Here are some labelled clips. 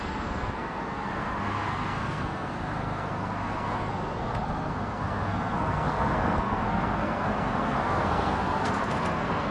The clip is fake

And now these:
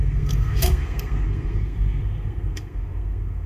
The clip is fake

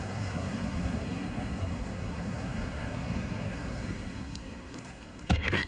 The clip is fake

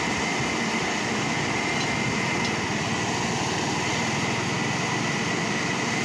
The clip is real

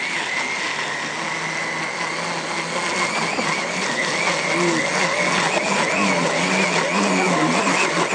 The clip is real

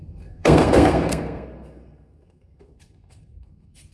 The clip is fake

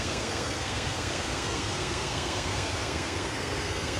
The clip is fake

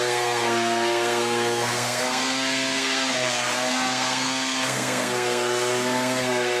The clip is fake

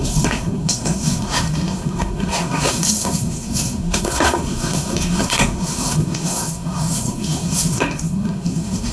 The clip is fake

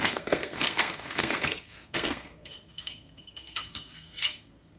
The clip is fake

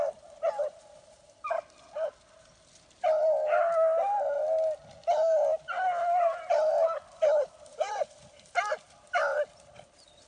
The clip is real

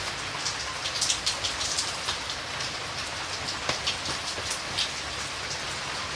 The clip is real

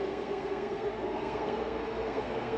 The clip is fake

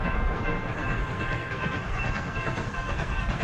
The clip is fake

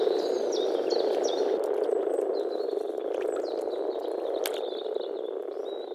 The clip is real